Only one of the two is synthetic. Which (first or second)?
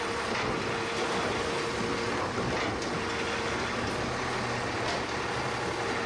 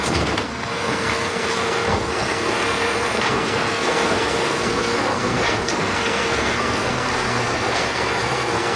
second